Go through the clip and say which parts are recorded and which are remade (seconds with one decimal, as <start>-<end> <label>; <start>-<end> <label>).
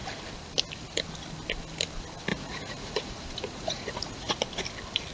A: 0.0-2.3 recorded; 2.3-4.3 remade; 4.3-5.1 recorded